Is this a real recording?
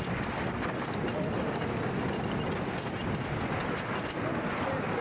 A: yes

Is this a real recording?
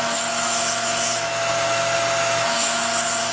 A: no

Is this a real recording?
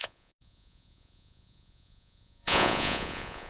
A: no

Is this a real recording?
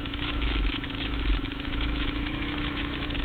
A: no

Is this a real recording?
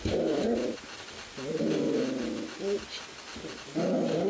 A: yes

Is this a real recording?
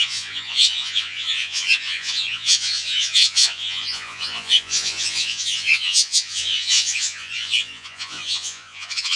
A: no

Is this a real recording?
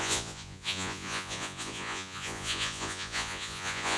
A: no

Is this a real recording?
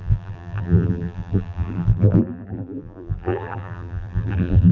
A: no